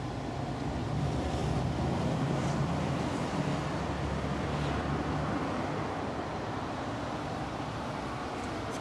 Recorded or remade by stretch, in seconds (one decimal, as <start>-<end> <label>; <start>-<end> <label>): 0.0-8.8 recorded